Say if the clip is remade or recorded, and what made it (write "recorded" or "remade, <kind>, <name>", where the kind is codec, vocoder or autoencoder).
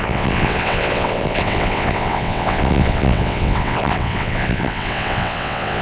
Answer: remade, vocoder, WaveNeXt